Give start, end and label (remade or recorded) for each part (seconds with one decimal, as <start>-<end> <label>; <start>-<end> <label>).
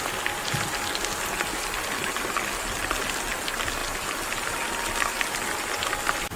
0.0-6.4 recorded